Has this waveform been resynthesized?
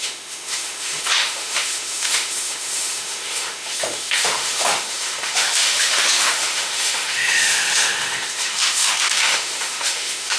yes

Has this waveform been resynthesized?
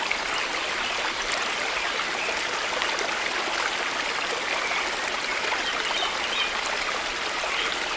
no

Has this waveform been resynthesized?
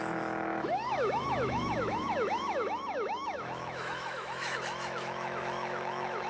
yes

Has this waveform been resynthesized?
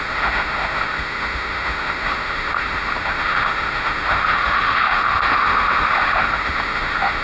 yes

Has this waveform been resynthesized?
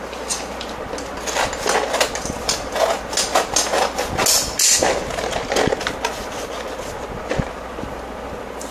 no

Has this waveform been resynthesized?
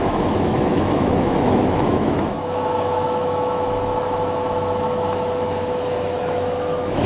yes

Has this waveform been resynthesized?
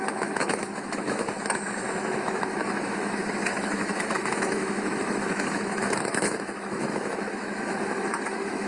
yes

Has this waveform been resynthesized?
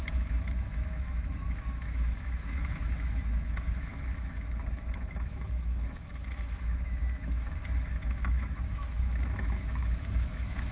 yes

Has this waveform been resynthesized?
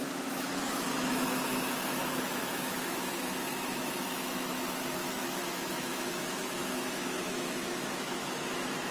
yes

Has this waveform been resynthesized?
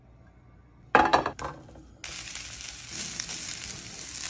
no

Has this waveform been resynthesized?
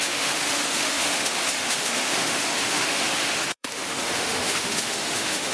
yes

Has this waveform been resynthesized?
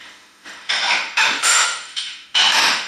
yes